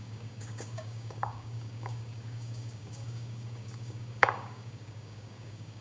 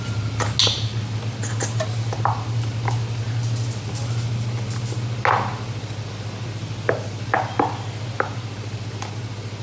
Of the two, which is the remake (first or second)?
first